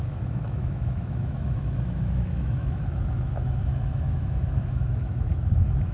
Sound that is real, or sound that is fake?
fake